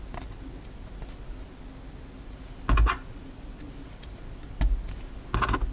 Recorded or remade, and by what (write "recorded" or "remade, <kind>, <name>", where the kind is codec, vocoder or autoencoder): recorded